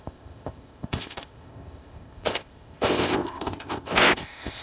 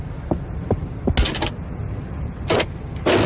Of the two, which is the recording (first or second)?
second